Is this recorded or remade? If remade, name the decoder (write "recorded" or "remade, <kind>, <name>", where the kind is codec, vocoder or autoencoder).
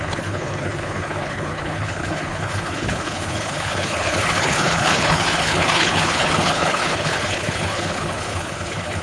remade, codec, HILCodec